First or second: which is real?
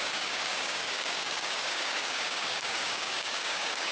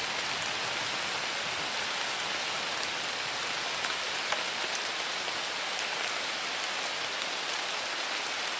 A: second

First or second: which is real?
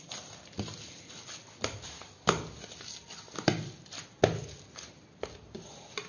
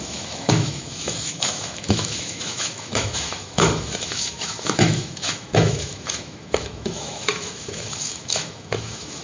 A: first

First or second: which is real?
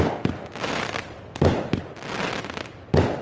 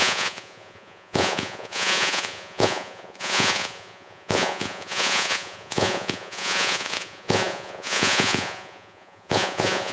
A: first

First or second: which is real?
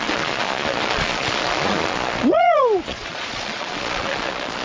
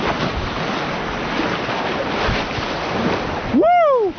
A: second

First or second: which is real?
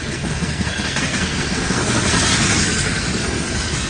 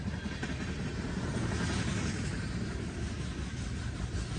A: second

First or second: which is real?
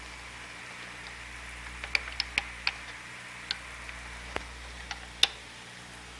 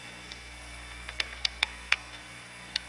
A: first